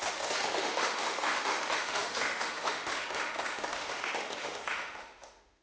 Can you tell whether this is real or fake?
fake